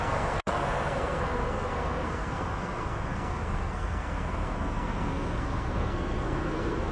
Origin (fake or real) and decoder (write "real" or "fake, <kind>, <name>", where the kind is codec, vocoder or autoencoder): fake, codec, SNAC